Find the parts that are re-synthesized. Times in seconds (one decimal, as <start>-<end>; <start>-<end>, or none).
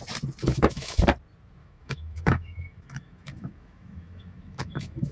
0.4-1.0; 1.6-5.1